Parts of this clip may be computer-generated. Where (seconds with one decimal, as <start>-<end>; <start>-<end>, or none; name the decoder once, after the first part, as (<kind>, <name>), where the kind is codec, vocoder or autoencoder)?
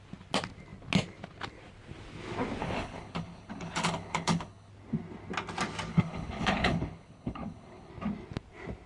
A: 2.6-4.7 (codec, HILCodec); 5.9-7.9